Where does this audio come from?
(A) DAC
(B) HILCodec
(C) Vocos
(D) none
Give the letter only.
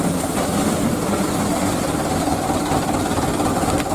D